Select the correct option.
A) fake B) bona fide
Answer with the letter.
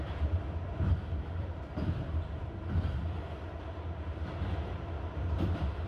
A